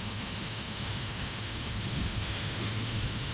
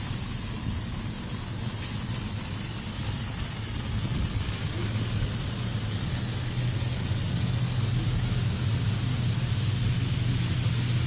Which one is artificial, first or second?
first